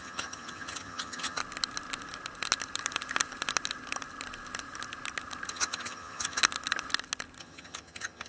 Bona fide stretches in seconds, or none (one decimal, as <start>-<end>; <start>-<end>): 1.4-5.5; 6.4-7.4